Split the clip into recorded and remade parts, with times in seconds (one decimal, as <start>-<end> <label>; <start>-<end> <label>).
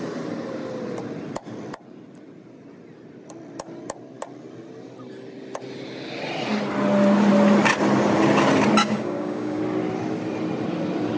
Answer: 0.0-8.8 recorded; 8.8-9.6 remade; 9.6-11.2 recorded